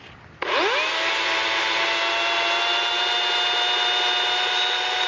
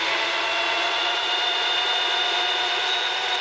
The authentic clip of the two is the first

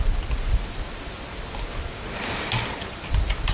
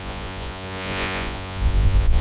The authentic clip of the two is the first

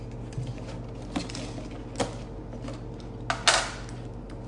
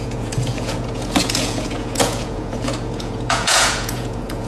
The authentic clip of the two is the first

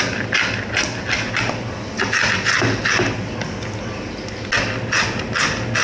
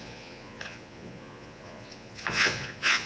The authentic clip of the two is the first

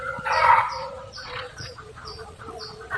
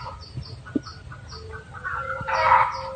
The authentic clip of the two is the second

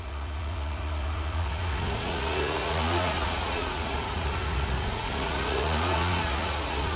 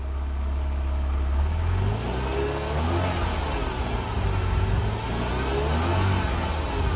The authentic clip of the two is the second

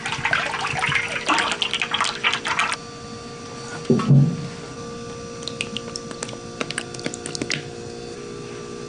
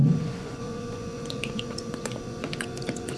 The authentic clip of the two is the first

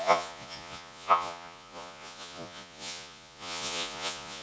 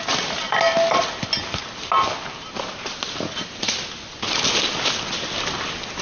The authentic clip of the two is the second